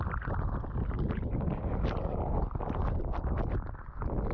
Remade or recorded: recorded